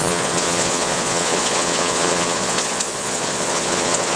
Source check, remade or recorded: remade